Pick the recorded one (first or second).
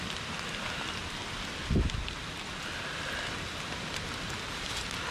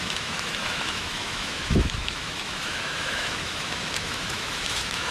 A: first